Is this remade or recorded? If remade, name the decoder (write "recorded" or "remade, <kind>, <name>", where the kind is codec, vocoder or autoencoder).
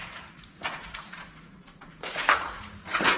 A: remade, vocoder, Vocos